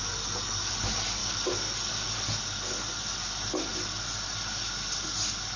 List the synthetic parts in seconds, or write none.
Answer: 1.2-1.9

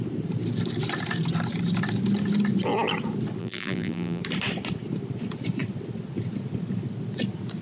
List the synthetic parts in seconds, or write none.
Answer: 3.4-4.2

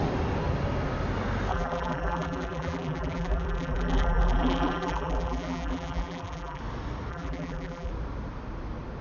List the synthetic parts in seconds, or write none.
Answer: 1.5-6.6; 7.1-7.9

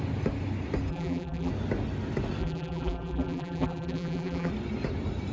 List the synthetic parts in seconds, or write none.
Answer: 0.9-1.5; 2.4-4.5

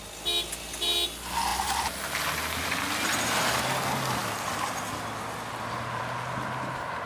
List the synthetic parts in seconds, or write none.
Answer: none

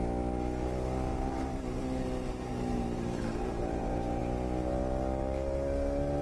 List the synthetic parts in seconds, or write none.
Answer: 1.1-1.8; 2.5-4.2

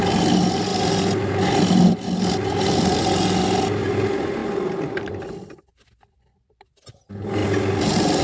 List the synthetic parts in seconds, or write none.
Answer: none